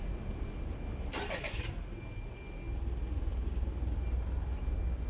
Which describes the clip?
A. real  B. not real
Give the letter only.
A